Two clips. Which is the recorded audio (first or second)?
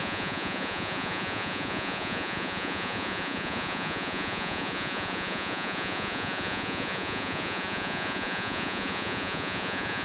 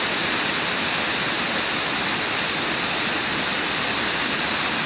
second